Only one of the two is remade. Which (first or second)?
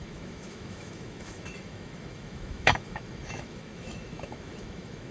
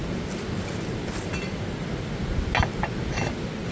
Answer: first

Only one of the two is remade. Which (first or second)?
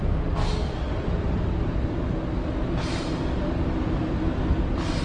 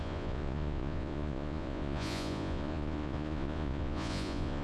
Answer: second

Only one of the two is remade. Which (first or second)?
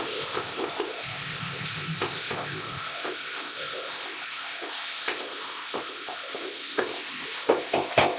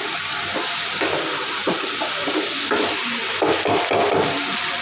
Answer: first